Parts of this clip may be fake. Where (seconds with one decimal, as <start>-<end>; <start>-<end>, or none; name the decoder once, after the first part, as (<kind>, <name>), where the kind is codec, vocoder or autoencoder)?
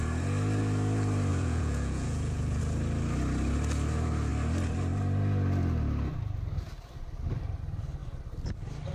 1.3-2.6 (vocoder, Vocos)